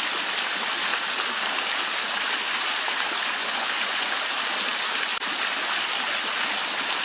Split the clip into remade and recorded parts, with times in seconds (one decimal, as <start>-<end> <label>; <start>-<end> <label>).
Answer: 0.0-3.4 recorded; 3.4-4.1 remade; 4.1-7.0 recorded